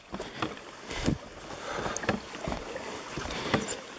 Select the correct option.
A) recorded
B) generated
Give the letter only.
A